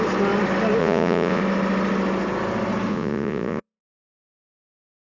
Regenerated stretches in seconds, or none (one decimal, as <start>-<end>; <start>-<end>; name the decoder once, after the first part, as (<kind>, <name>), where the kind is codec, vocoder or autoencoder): 0.8-1.4 (vocoder, Vocos); 2.9-3.8